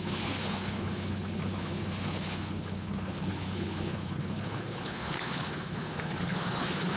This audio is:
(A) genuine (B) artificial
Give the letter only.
B